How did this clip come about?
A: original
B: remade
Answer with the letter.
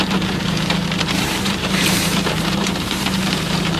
B